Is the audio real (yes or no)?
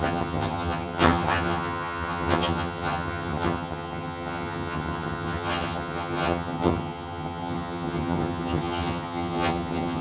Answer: no